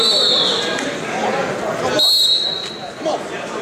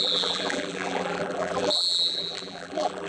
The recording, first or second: first